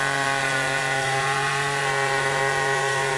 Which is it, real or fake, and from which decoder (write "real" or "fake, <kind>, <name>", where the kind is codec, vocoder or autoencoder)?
fake, vocoder, Vocos